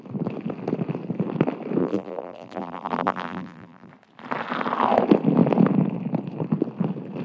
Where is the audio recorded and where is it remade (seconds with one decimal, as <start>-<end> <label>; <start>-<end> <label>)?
0.0-1.8 recorded; 1.8-3.9 remade; 3.9-7.2 recorded